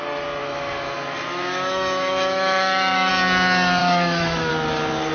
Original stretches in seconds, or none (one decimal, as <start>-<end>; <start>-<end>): 0.0-0.4; 3.1-3.8; 4.5-5.1